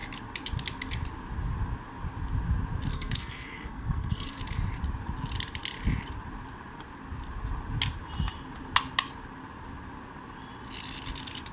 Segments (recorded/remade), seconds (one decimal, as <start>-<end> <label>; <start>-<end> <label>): 0.0-2.9 recorded; 2.9-4.4 remade; 4.4-11.5 recorded